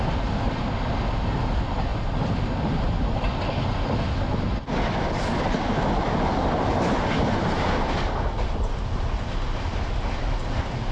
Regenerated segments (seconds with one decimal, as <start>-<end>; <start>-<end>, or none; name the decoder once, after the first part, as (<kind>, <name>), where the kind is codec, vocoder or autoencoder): none